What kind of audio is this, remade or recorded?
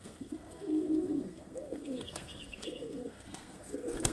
remade